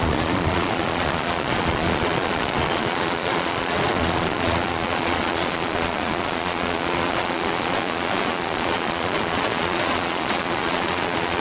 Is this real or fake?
fake